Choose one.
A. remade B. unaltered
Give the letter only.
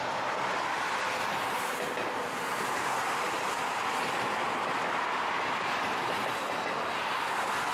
B